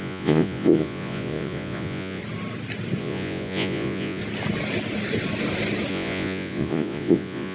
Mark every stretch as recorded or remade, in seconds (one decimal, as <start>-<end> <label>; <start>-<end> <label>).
0.0-2.2 remade; 2.2-3.0 recorded; 3.0-4.2 remade; 4.2-5.9 recorded; 5.9-7.5 remade